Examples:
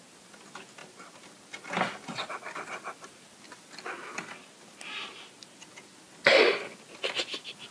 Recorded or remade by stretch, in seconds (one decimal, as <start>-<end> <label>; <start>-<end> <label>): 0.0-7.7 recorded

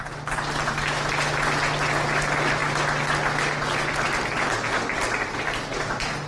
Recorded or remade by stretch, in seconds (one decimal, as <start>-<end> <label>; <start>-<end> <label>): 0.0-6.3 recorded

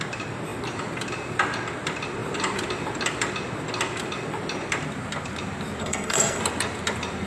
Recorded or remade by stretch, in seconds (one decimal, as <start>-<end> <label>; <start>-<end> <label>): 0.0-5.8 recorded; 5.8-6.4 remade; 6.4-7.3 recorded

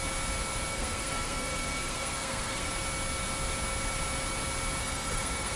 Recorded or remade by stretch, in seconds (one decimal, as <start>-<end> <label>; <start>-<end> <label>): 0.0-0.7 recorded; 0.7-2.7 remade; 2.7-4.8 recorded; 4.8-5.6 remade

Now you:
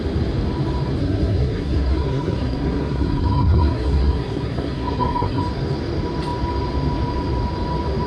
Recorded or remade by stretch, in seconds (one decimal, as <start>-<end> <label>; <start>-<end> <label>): 0.0-1.0 recorded; 1.0-5.4 remade; 5.4-8.1 recorded